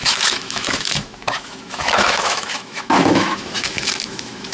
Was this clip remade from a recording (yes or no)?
yes